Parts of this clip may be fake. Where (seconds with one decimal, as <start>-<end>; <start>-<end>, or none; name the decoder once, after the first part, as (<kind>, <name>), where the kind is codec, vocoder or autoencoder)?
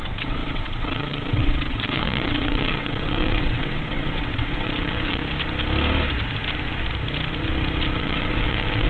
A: 0.0-5.2 (vocoder, WaveNeXt); 8.0-8.9